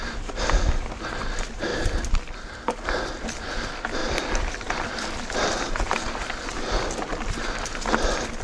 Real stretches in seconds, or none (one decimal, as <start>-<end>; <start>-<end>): 0.0-1.7; 3.3-4.0; 7.3-8.4

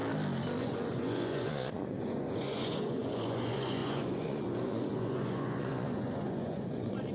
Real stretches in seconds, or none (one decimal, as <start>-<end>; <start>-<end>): 0.0-0.6

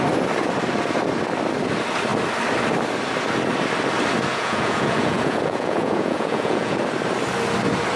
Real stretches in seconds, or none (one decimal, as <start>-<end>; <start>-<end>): 0.0-4.3; 6.8-8.0

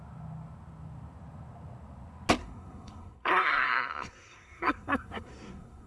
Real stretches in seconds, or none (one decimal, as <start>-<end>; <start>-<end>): 0.0-2.4

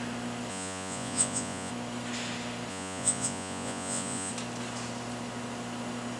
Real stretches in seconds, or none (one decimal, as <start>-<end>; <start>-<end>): 0.0-0.5; 1.7-2.7; 4.3-6.2

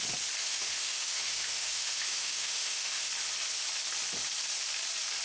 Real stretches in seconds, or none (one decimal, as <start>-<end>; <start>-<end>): 0.0-0.4; 3.1-5.2

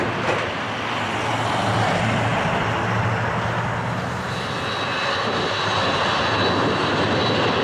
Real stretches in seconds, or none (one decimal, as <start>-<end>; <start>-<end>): 0.0-7.6